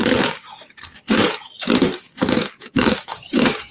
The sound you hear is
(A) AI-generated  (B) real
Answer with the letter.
A